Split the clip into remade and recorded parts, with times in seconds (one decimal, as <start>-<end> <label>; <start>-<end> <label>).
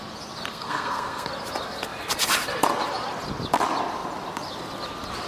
0.0-0.5 recorded; 0.5-1.3 remade; 1.3-5.3 recorded